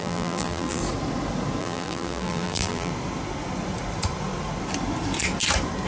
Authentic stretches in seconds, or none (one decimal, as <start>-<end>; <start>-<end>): 0.8-1.6; 2.9-5.9